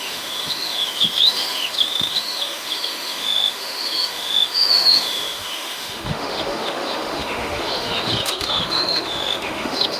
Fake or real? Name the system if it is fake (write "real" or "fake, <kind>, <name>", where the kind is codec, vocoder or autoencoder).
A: fake, autoencoder, DAC-VAE